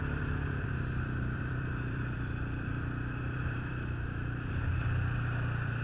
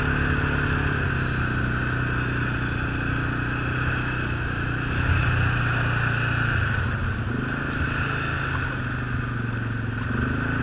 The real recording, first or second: second